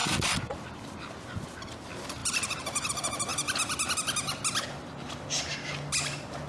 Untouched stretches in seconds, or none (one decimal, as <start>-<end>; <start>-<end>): 1.7-2.2; 2.9-6.5